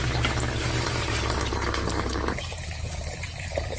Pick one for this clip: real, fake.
fake